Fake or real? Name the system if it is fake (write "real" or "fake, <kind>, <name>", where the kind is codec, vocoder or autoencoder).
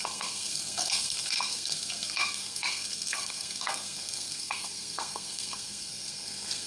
fake, codec, SNAC